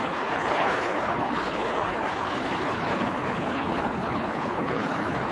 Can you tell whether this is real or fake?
fake